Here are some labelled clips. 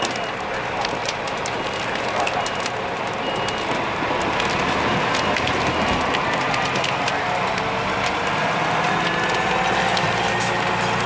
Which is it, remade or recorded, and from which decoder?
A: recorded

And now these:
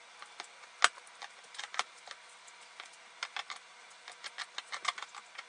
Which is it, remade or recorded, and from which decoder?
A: recorded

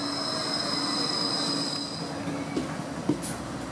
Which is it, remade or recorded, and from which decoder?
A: recorded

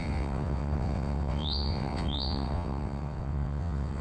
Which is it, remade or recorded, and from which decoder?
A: remade, vocoder, WaveNeXt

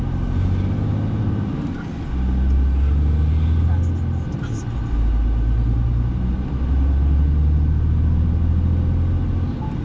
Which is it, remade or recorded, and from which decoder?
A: recorded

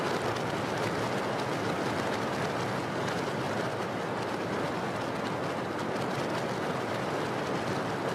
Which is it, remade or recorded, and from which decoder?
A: recorded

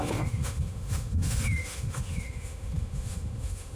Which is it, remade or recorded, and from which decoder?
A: remade, autoencoder, DAC-VAE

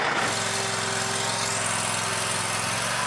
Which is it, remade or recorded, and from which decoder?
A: recorded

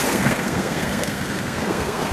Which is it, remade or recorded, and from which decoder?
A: remade, codec, SNAC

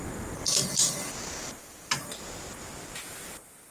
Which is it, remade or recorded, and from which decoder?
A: recorded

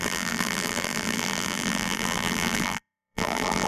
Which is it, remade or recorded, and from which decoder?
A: remade, vocoder, BigVGAN v2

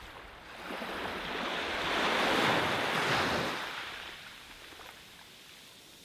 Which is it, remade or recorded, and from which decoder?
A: recorded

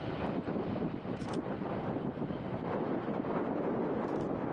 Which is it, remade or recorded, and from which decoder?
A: recorded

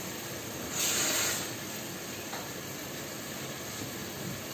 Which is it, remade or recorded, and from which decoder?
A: recorded